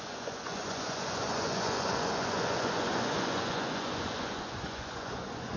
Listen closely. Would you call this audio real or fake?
fake